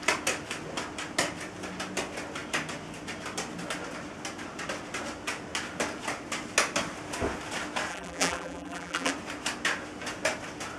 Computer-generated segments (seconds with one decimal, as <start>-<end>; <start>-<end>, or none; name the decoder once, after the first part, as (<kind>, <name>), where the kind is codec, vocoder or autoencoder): 7.9-9.1 (vocoder, BigVGAN v2)